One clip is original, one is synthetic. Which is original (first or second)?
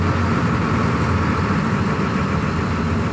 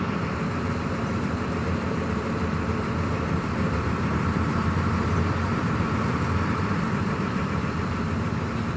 first